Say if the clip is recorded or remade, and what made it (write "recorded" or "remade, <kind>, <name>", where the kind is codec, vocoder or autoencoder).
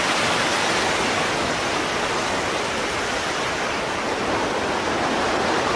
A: recorded